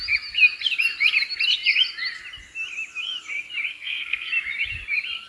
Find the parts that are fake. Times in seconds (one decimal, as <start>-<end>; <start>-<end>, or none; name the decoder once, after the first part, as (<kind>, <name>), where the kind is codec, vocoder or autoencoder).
3.7-4.3 (codec, SNAC)